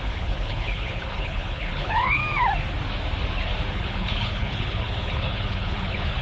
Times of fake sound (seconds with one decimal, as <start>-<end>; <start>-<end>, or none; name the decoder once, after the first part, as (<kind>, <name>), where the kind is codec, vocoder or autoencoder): 0.0-2.2 (codec, HILCodec); 3.7-6.2

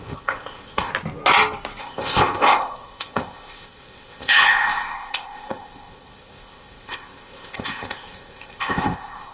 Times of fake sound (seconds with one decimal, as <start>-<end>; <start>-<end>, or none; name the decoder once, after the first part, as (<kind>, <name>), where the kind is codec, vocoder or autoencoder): 0.0-0.9 (codec, ZipCodec); 1.8-9.3

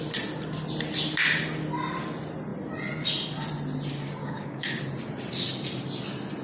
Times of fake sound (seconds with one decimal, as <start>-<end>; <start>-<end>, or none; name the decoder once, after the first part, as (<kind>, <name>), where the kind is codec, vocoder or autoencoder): 4.2-4.8 (codec, DAC)

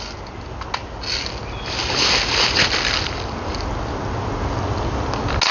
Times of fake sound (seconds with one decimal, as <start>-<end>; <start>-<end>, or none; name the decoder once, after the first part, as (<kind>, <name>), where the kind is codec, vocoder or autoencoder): none

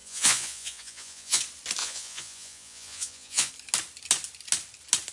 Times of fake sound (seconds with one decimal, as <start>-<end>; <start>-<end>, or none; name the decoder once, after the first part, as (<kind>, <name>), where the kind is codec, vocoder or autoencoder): 0.0-1.4 (vocoder, Vocos); 1.8-3.5

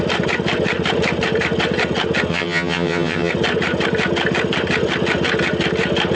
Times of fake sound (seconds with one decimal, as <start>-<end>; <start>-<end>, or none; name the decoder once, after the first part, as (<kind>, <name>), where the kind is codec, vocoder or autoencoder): 2.3-3.3 (vocoder, HiFi-GAN)